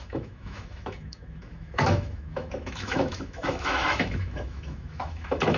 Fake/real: fake